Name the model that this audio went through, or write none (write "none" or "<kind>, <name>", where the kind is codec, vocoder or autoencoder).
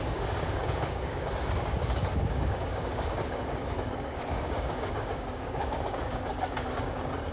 codec, DAC